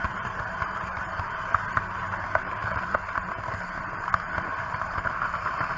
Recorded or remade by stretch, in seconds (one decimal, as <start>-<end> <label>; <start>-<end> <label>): 0.0-5.8 recorded